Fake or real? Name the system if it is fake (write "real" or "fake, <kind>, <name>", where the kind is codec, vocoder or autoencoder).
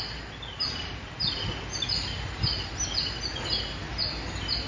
real